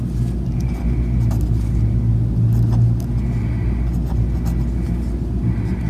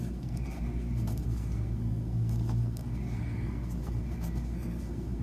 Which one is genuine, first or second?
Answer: first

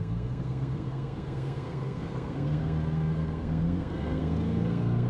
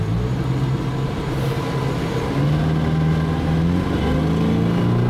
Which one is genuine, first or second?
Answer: second